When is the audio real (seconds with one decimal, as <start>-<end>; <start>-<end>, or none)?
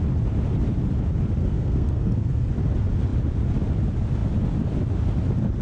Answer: 0.0-1.4; 2.5-5.6